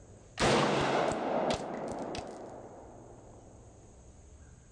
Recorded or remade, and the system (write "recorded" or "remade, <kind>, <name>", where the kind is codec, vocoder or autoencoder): recorded